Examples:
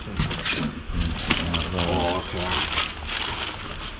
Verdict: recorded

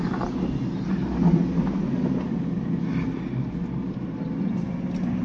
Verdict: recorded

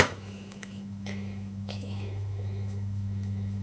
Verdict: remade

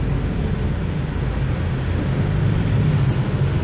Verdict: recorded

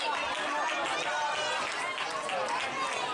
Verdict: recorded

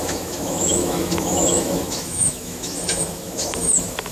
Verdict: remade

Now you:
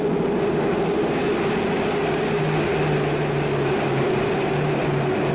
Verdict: recorded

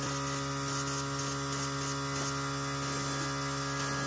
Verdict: recorded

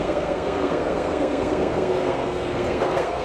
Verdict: remade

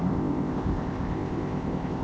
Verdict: remade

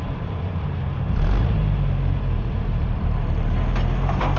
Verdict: remade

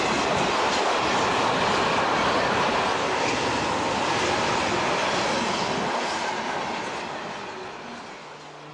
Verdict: recorded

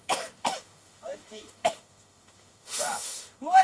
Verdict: remade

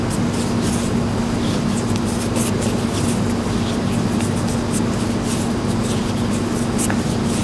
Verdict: recorded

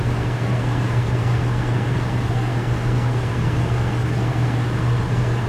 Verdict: remade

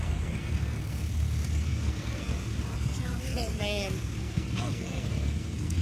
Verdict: remade